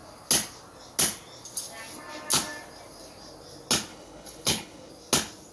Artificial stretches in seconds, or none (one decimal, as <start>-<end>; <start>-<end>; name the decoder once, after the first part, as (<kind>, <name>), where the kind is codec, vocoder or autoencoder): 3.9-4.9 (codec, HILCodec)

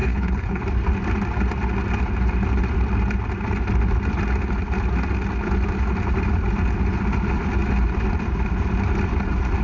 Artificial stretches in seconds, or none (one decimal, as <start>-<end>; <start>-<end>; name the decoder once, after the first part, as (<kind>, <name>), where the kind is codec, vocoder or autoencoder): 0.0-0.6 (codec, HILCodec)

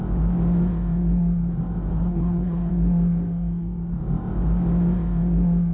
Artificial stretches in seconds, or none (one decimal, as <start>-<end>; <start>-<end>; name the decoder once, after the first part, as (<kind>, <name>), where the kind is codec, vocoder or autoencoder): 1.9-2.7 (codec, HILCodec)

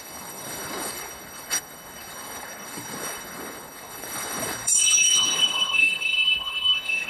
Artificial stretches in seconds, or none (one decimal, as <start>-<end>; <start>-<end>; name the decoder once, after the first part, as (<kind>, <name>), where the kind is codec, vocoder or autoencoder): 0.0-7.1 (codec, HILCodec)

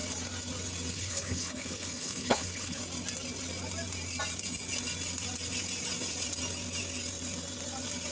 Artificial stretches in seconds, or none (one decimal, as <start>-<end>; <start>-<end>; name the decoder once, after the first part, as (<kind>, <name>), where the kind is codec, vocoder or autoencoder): 0.9-2.8 (codec, HILCodec)